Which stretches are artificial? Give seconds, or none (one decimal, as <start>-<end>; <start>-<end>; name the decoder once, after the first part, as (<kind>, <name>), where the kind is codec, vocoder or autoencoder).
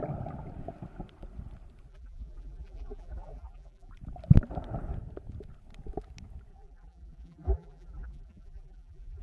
1.9-3.9 (vocoder, BigVGAN v2); 6.5-9.2